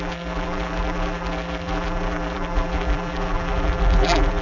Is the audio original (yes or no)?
no